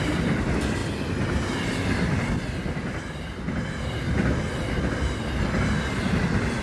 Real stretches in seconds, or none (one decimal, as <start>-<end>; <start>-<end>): 0.0-6.6